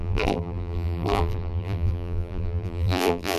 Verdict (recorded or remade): remade